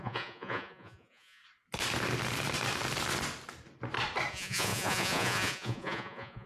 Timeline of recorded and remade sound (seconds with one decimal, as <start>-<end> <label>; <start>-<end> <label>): 0.0-1.4 remade; 1.4-4.3 recorded; 4.3-6.5 remade